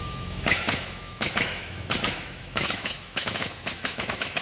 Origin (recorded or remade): remade